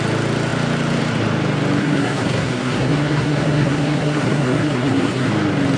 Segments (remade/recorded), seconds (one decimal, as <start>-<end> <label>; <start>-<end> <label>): 0.0-1.8 recorded; 1.8-5.3 remade; 5.3-5.8 recorded